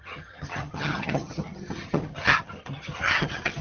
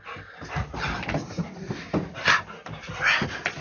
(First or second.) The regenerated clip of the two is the first